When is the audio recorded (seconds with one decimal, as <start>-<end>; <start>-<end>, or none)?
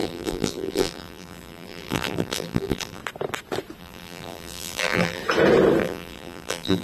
3.0-3.8; 5.2-5.8